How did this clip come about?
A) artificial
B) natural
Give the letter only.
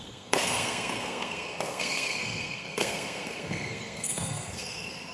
A